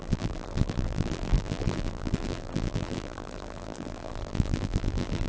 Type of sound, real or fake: fake